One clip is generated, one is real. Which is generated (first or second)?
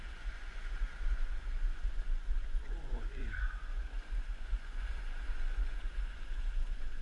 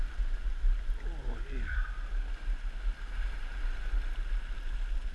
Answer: first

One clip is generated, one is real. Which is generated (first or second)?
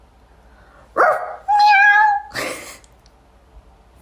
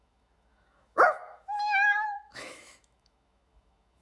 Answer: second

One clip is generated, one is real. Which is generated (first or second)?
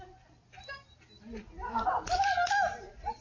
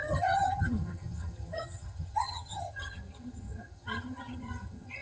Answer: second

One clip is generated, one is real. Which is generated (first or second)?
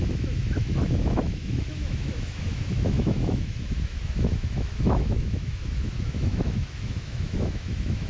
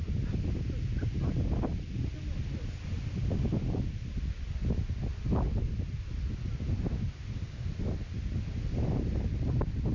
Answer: first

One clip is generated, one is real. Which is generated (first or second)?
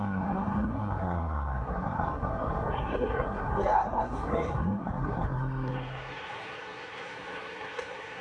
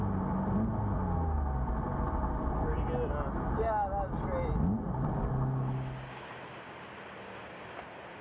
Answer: first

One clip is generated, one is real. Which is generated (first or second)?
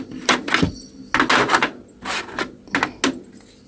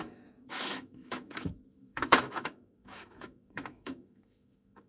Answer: second